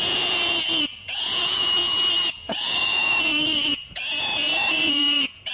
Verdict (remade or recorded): remade